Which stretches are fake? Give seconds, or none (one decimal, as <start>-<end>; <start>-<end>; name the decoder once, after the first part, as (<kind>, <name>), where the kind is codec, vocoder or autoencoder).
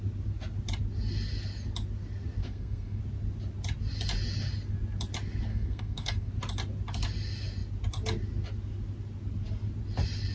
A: 2.4-3.0 (codec, SNAC); 5.5-6.3